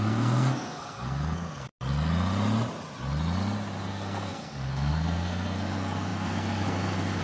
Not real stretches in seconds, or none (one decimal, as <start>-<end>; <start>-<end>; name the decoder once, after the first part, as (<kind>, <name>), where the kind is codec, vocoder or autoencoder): 0.0-1.7 (codec, SNAC); 3.9-7.2

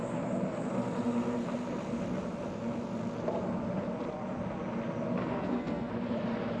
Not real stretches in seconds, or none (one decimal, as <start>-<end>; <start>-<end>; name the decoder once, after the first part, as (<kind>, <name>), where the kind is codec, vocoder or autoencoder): 5.2-5.9 (codec, SNAC)

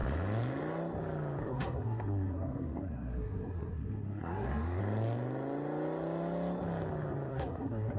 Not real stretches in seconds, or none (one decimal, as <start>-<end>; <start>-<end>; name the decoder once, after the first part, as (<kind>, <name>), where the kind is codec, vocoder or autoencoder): 1.4-4.8 (codec, SNAC); 7.3-8.0

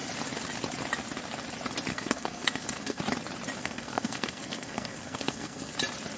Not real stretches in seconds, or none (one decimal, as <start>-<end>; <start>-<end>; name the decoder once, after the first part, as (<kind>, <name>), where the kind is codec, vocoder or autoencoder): 1.9-3.0 (codec, SNAC); 3.6-5.7

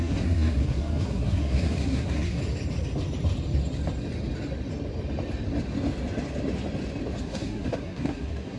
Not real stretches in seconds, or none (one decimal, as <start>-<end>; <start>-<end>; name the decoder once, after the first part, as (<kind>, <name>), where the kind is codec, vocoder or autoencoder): 0.0-2.4 (codec, SNAC); 7.2-8.6